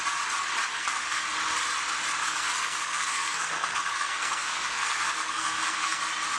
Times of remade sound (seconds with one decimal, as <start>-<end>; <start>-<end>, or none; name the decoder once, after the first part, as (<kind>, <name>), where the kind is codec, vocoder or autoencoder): 0.7-1.2 (codec, SNAC); 2.2-6.0